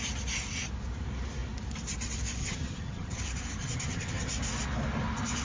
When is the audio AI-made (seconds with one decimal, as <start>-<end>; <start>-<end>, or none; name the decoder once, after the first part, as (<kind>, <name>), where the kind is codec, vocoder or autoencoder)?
2.4-3.2 (vocoder, HiFi-GAN); 3.6-4.3